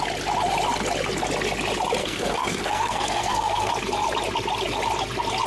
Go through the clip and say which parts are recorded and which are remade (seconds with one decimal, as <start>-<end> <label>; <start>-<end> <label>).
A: 0.0-2.0 recorded; 2.0-3.7 remade; 3.7-5.5 recorded